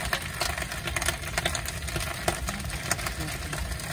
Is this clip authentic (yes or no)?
yes